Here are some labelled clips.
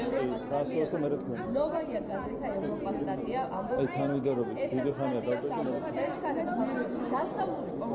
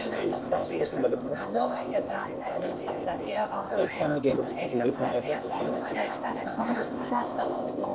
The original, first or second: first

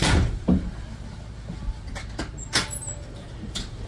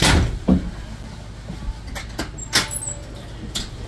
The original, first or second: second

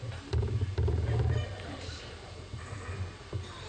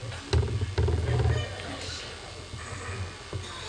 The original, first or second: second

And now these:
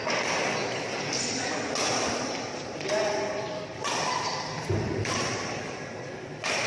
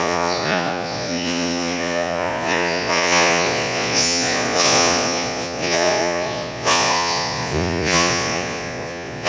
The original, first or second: first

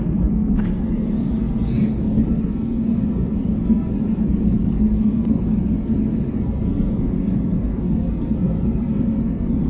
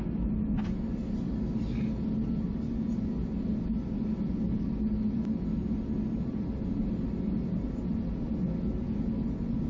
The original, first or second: second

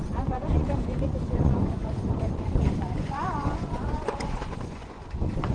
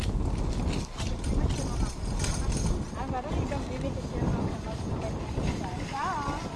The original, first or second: second